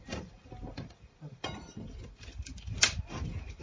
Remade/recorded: remade